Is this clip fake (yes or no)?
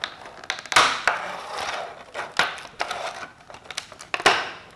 no